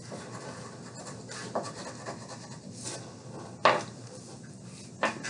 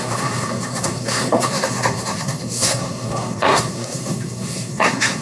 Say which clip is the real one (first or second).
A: first